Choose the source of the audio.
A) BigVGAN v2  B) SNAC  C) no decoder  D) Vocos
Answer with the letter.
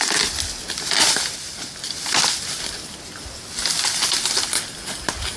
C